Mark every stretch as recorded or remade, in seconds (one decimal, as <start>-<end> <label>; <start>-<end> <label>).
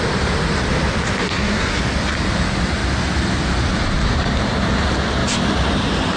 0.0-1.2 recorded; 1.2-1.8 remade; 1.8-6.2 recorded